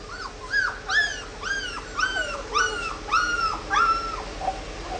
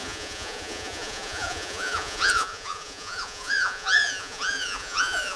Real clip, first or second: first